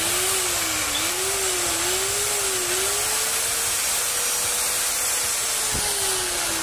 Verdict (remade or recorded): recorded